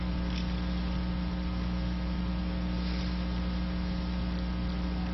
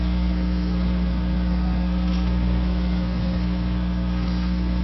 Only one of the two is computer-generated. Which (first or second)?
second